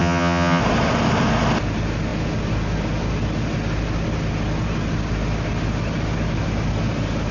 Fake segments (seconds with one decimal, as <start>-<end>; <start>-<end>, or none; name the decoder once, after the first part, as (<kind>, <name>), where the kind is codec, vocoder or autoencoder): 0.0-0.6 (vocoder, HiFi-GAN)